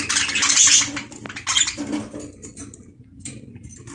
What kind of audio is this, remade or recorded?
recorded